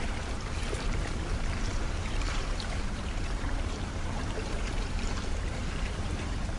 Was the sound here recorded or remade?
remade